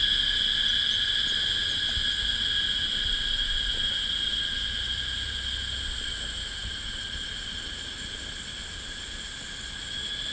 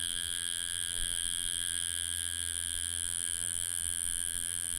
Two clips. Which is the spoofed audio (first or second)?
second